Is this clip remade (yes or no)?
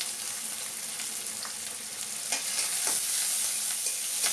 no